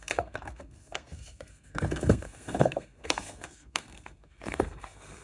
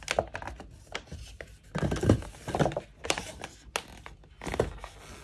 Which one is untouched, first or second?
second